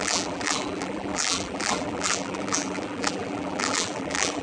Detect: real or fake fake